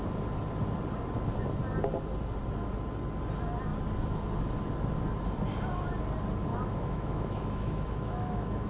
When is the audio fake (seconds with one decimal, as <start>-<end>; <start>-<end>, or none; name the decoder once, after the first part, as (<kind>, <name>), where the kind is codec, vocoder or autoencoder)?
6.5-8.7 (autoencoder, DAC-VAE)